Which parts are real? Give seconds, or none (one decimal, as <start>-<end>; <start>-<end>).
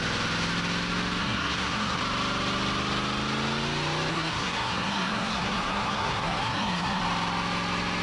0.0-1.2; 2.0-4.1; 7.0-8.0